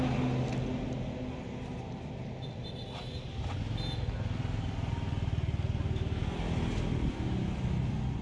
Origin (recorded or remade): recorded